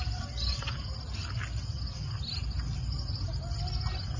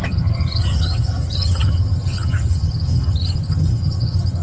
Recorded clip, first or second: first